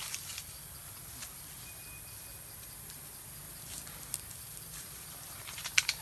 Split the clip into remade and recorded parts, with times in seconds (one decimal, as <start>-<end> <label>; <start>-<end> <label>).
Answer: 0.0-0.8 remade; 0.8-4.3 recorded; 4.3-6.0 remade